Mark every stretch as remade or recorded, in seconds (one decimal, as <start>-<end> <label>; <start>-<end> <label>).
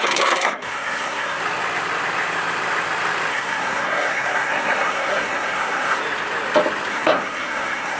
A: 0.0-1.4 remade; 1.4-3.3 recorded; 3.3-6.0 remade; 6.0-6.9 recorded; 6.9-8.0 remade